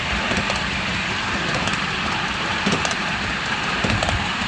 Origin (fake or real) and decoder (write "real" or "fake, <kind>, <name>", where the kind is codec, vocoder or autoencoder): real